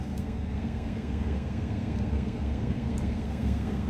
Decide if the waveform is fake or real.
fake